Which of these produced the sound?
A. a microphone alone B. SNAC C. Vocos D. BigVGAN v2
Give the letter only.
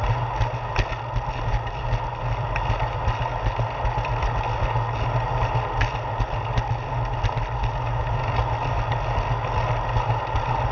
A